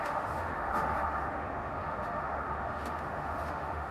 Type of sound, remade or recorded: remade